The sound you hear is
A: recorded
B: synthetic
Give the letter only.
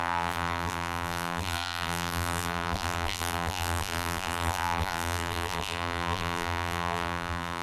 B